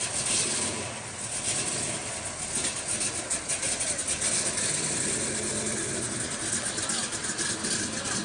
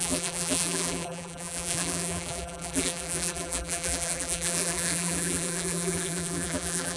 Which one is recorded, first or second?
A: first